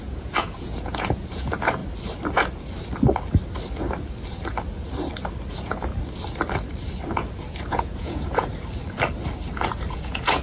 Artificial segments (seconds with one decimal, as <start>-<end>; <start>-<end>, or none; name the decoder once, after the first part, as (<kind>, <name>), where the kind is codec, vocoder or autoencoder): 0.0-1.8 (vocoder, Vocos); 5.5-5.9; 7.7-8.5; 9.9-10.4